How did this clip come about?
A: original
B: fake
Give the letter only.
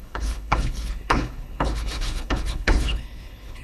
B